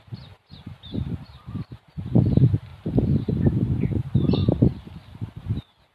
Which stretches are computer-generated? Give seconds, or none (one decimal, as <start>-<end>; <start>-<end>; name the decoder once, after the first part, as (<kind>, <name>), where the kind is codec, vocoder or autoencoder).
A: none